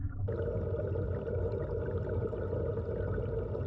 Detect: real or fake real